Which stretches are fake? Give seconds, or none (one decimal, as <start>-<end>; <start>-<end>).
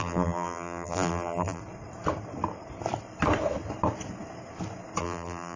0.0-1.6; 5.0-5.6